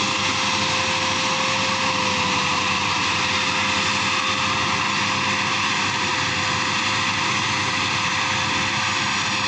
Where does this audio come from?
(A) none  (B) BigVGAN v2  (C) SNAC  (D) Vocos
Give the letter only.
A